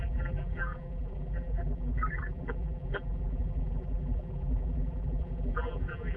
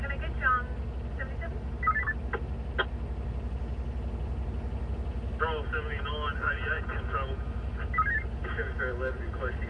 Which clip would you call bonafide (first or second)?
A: second